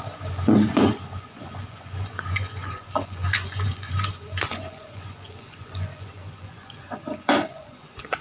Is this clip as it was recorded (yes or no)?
no